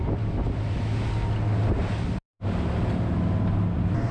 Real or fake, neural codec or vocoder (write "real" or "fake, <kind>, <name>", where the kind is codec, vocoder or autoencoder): real